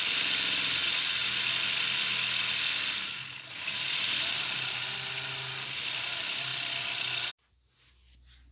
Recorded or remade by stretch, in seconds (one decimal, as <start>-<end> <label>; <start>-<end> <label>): 0.0-8.5 recorded